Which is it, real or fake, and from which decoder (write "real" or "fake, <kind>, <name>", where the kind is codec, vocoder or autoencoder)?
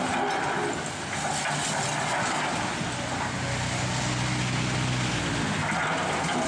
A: real